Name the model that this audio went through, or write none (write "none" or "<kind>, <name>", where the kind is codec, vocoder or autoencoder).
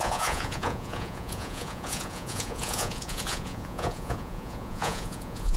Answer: vocoder, Vocos